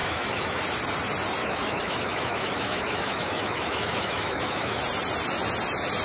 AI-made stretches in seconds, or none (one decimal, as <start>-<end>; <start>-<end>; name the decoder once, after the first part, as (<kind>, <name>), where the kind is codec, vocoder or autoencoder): 0.0-0.6 (autoencoder, DAC-VAE); 1.4-4.8